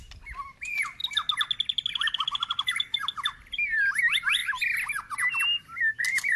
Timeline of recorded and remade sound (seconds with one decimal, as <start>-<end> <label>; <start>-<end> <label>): 0.0-1.0 remade; 1.0-1.9 recorded; 1.9-4.4 remade; 4.4-6.0 recorded; 6.0-6.4 remade